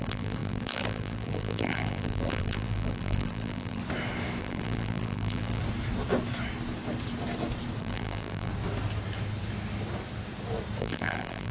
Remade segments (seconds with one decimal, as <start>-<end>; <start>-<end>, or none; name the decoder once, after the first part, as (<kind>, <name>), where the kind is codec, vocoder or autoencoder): 0.0-3.8 (vocoder, BigVGAN v2); 4.4-5.6; 7.8-8.5; 10.8-11.5

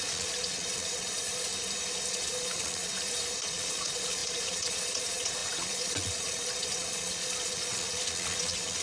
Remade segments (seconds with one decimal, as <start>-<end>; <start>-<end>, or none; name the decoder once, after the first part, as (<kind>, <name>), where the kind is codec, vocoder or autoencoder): 0.0-1.5 (vocoder, Vocos); 2.1-2.9; 3.4-8.8